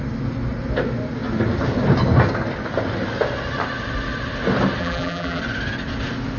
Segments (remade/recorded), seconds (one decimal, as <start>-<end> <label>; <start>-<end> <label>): 0.0-4.8 recorded; 4.8-5.4 remade; 5.4-6.4 recorded